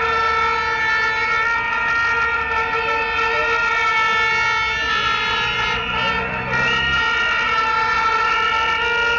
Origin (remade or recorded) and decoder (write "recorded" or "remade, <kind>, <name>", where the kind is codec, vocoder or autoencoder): recorded